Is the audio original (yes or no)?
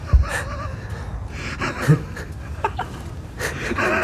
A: yes